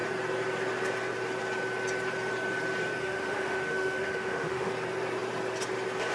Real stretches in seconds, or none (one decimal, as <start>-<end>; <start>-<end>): 0.0-3.0; 4.7-6.1